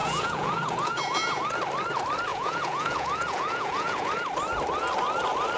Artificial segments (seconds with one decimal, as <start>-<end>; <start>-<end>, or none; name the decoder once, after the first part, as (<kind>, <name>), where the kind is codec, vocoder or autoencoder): 0.0-1.4 (vocoder, Vocos); 2.3-4.1